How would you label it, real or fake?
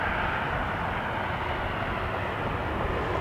real